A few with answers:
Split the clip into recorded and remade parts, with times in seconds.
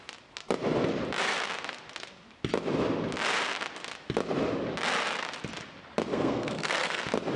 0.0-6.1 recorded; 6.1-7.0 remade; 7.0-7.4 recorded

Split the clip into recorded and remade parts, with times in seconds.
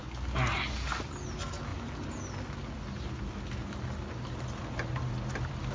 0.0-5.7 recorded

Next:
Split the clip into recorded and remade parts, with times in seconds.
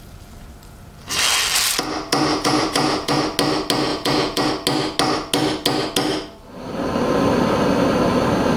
0.0-2.3 recorded; 2.3-3.2 remade; 3.2-3.9 recorded; 3.9-4.5 remade; 4.5-8.6 recorded